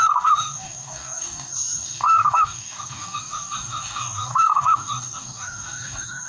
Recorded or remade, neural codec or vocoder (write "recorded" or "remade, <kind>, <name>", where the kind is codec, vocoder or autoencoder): remade, codec, DAC